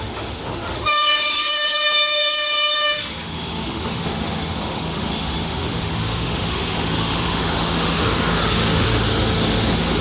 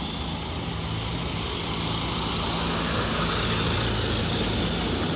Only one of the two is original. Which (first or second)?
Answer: second